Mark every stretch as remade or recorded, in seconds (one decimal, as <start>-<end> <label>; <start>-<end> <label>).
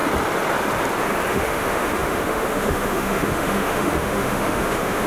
0.0-1.3 recorded; 1.3-5.1 remade